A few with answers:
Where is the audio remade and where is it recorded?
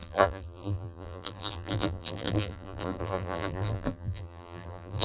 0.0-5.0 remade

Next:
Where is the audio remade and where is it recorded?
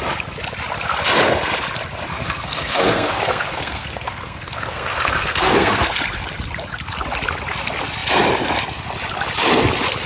0.0-2.1 recorded; 2.1-6.0 remade; 6.0-10.1 recorded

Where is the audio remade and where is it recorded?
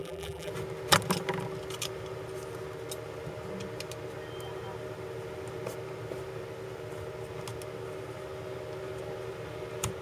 0.0-0.5 remade; 0.5-10.0 recorded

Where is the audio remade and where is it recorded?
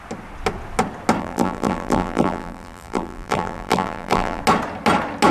0.0-1.2 recorded; 1.2-4.4 remade; 4.4-5.3 recorded